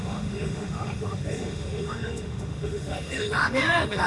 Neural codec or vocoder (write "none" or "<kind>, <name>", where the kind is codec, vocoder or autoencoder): autoencoder, DAC-VAE